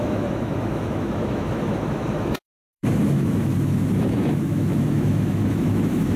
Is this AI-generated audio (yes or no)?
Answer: yes